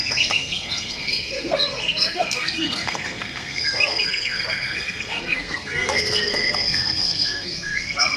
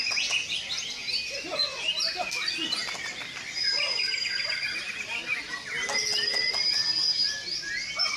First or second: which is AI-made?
first